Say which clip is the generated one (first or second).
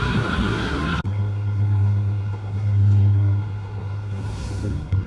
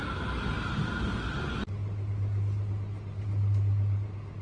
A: first